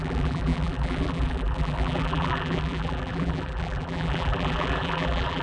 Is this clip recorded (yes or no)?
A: no